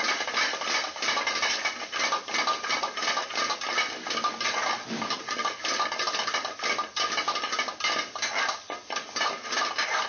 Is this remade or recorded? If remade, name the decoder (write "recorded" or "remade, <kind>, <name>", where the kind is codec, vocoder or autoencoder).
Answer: recorded